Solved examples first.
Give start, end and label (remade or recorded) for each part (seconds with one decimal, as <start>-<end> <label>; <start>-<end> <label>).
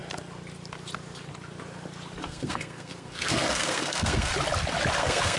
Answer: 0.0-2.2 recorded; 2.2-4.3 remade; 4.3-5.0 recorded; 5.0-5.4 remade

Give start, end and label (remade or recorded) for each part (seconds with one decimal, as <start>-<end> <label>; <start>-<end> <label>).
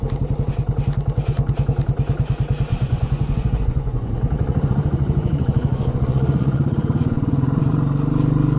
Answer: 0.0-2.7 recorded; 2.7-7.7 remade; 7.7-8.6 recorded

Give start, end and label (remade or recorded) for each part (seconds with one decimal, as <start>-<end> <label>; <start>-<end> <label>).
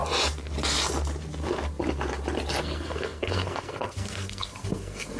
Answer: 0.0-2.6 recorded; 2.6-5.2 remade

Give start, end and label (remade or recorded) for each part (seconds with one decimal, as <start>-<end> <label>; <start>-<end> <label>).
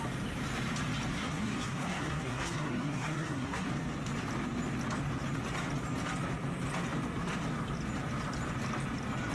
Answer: 0.0-1.1 recorded; 1.1-3.7 remade; 3.7-9.3 recorded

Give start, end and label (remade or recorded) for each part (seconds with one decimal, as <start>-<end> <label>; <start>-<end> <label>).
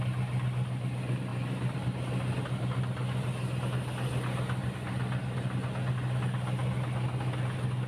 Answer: 0.0-7.9 recorded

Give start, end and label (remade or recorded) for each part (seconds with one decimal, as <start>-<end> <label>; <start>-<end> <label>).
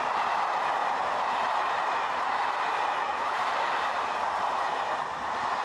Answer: 0.0-0.8 recorded; 0.8-4.2 remade; 4.2-5.6 recorded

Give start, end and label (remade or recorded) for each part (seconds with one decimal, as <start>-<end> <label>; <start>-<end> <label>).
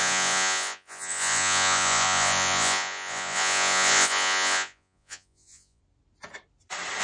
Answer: 0.0-5.8 remade; 5.8-7.0 recorded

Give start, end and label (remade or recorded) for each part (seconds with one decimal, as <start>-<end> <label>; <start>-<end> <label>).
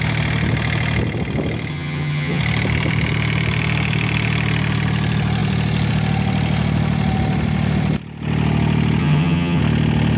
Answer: 0.0-1.7 recorded; 1.7-2.4 remade; 2.4-9.0 recorded; 9.0-9.6 remade; 9.6-10.2 recorded